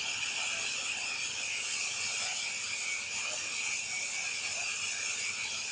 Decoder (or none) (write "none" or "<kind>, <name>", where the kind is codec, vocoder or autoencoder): none